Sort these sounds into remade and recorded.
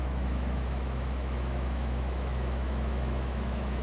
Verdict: remade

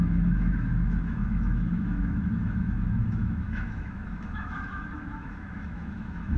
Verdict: remade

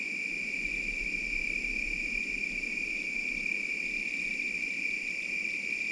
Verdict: recorded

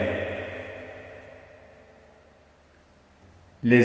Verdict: recorded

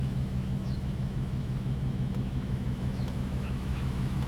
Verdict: remade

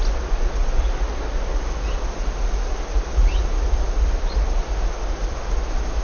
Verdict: recorded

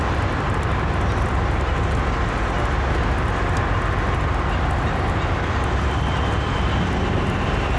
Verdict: recorded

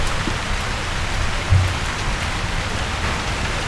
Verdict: recorded